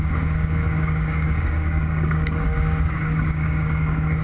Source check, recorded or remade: remade